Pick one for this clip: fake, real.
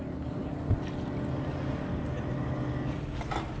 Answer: real